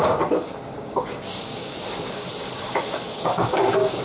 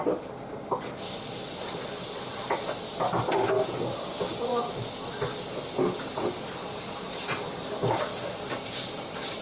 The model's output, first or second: first